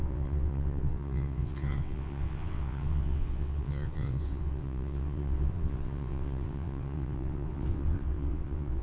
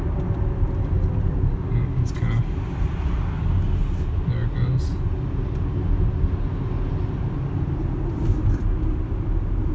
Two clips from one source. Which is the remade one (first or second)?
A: first